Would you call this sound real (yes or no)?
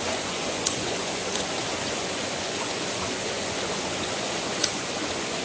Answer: no